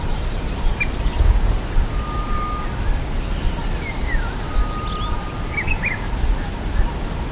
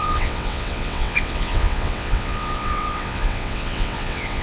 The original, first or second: first